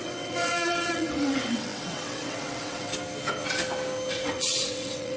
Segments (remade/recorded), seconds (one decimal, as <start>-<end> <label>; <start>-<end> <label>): 0.0-2.9 remade; 2.9-4.1 recorded; 4.1-5.2 remade